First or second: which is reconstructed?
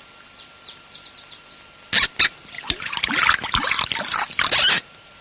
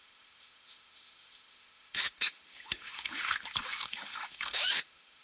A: second